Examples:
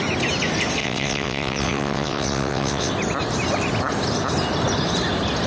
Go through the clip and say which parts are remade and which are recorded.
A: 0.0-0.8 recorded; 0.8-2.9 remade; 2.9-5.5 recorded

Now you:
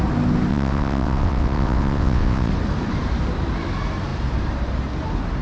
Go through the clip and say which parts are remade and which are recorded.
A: 0.0-0.5 recorded; 0.5-2.5 remade; 2.5-5.4 recorded

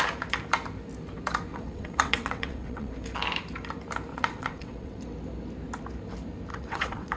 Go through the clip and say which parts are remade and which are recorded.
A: 0.0-1.5 recorded; 1.5-2.9 remade; 2.9-4.1 recorded; 4.1-5.0 remade; 5.0-6.5 recorded; 6.5-7.2 remade

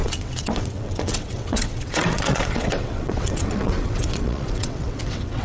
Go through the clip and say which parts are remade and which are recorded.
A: 0.0-5.4 remade

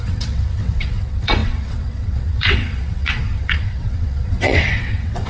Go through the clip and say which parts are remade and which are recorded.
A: 0.0-5.3 remade

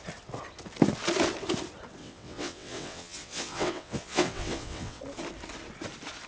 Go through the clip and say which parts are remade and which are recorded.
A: 0.0-2.0 recorded; 2.0-5.0 remade; 5.0-6.3 recorded